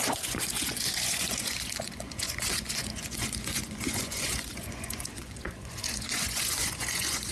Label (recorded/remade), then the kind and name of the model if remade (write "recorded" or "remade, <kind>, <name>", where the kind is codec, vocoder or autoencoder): remade, vocoder, Vocos